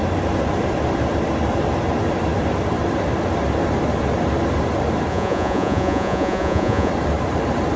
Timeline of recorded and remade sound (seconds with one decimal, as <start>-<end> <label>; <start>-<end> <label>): 0.0-5.1 recorded; 5.1-6.9 remade; 6.9-7.8 recorded

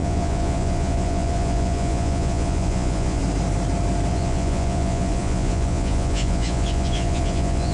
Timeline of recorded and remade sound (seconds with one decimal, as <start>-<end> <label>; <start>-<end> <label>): 0.0-3.2 remade; 3.2-4.1 recorded; 4.1-7.7 remade

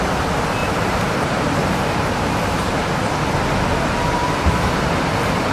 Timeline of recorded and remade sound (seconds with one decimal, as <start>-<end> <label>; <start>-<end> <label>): 0.0-0.6 recorded; 0.6-3.3 remade; 3.3-4.2 recorded; 4.2-4.9 remade; 4.9-5.5 recorded

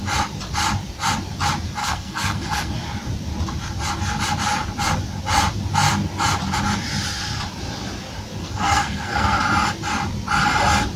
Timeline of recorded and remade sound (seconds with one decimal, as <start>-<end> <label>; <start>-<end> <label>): 0.0-1.8 recorded; 1.8-2.7 remade; 2.7-8.4 recorded; 8.4-9.4 remade; 9.4-11.0 recorded

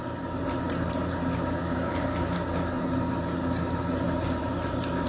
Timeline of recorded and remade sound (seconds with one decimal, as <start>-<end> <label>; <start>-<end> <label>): 0.0-5.1 recorded

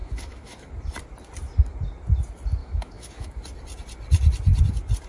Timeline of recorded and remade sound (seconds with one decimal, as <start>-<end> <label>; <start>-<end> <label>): 0.0-0.7 remade; 0.7-2.6 recorded; 2.6-3.4 remade; 3.4-5.1 recorded

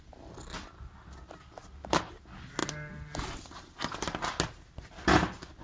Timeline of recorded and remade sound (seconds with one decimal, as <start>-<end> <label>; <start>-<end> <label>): 0.0-5.6 recorded

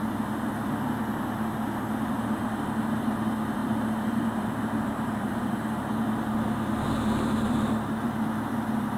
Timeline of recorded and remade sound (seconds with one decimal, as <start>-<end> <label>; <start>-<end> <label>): 0.0-3.6 recorded; 3.6-5.9 remade; 5.9-9.0 recorded